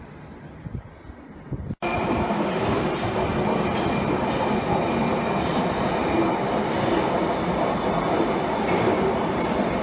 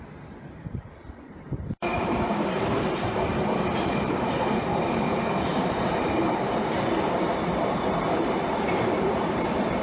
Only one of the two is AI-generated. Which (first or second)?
second